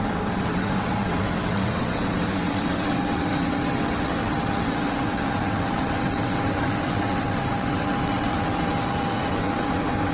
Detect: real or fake fake